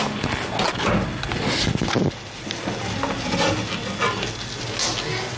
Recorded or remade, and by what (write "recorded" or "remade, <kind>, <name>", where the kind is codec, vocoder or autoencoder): recorded